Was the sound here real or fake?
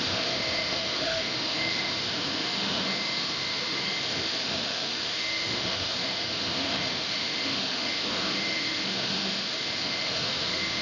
fake